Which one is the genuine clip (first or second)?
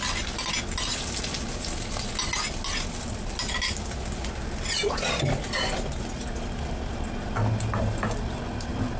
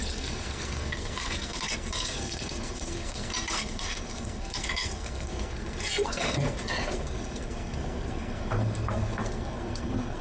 first